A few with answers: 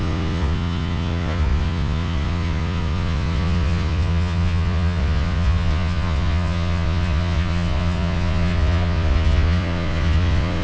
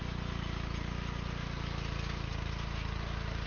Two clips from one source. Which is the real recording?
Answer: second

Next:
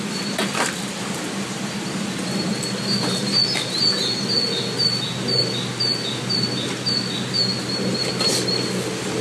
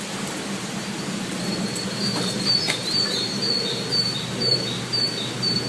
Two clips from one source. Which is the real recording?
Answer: first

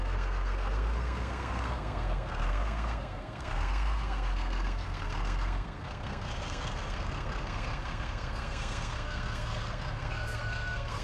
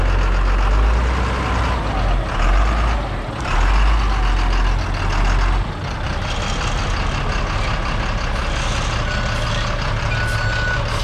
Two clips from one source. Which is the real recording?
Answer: second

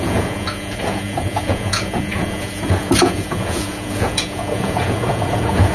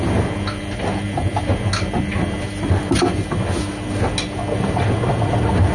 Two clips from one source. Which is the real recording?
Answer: second